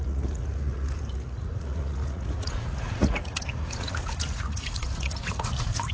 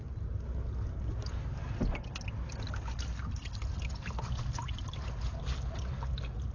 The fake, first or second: first